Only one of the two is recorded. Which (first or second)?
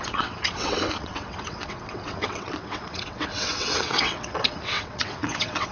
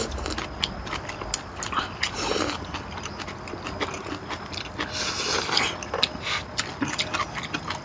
second